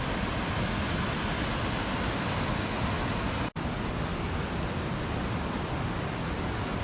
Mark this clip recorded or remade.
recorded